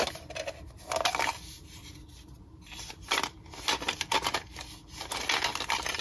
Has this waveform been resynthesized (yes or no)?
no